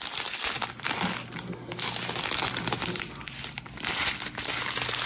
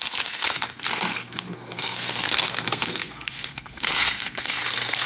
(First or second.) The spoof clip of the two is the second